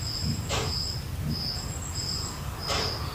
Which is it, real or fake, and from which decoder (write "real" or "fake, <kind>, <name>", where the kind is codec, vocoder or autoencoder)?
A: real